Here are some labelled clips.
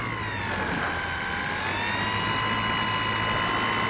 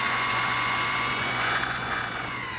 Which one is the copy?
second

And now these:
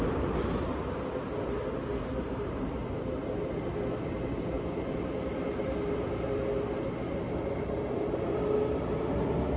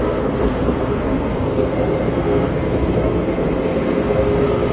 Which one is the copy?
second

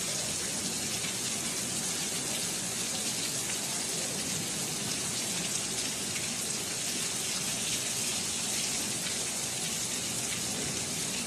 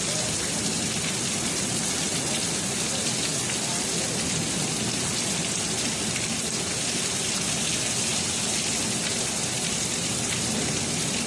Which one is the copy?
first